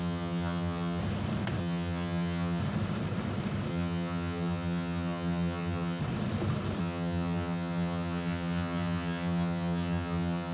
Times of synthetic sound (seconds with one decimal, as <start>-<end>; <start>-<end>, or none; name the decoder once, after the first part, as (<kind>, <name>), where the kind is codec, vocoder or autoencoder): 0.0-1.0 (vocoder, HiFi-GAN); 1.6-2.6; 3.7-6.0; 6.8-10.5